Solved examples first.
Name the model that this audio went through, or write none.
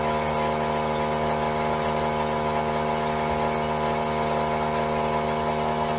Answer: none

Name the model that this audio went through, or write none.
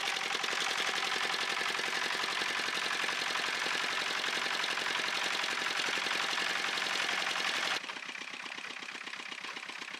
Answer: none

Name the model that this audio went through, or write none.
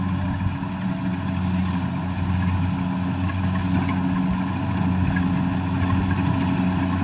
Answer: none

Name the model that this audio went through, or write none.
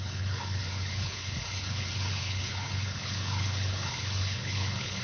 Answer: codec, HILCodec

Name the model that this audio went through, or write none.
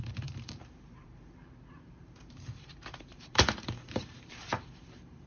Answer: vocoder, BigVGAN v2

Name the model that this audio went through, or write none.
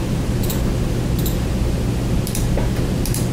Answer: vocoder, BigVGAN v2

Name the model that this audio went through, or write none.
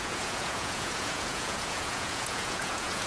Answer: vocoder, Vocos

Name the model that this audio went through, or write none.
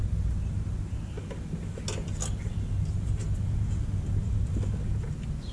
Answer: none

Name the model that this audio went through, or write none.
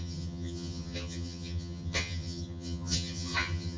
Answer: vocoder, HiFi-GAN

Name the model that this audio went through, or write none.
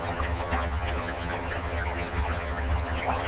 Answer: vocoder, HiFi-GAN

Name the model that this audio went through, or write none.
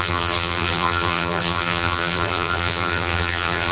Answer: vocoder, BigVGAN v2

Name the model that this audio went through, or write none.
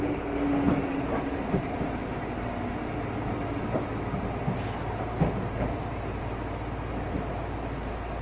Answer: none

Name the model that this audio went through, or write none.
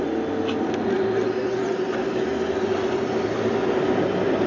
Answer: none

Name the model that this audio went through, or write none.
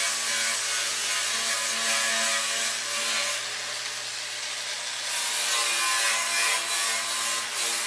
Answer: none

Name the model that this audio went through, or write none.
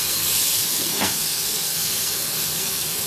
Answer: codec, SNAC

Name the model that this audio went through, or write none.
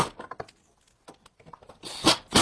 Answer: none